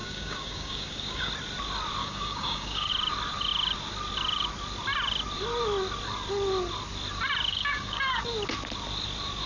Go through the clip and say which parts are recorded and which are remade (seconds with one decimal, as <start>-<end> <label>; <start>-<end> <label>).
0.0-1.3 remade; 1.3-2.0 recorded; 2.0-2.9 remade; 2.9-7.5 recorded; 7.5-8.2 remade; 8.2-9.5 recorded